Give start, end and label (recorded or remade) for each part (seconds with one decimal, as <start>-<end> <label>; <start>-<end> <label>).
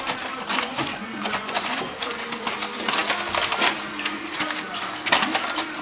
0.0-0.5 recorded; 0.5-1.9 remade; 1.9-5.8 recorded